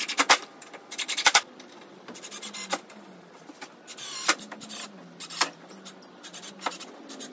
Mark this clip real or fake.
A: real